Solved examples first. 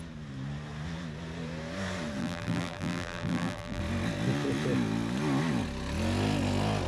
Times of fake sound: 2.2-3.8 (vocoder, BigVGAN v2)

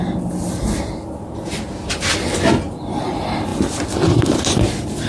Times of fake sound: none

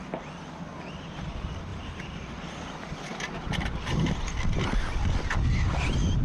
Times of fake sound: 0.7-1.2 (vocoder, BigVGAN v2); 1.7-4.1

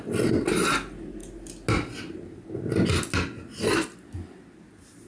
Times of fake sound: none

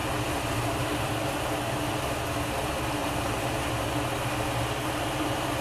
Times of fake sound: 0.0-1.1 (vocoder, BigVGAN v2); 3.0-3.7

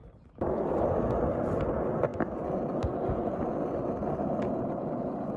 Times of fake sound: none

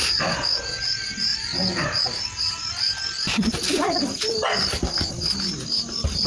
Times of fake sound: 1.3-5.1 (vocoder, BigVGAN v2)